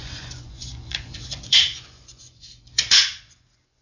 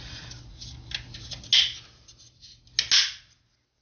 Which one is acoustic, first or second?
second